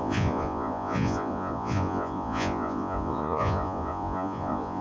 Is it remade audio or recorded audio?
remade